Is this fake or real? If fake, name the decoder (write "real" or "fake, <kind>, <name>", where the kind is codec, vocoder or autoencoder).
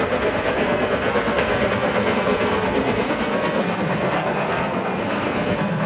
fake, codec, SNAC